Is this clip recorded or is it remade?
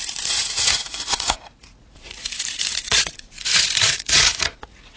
remade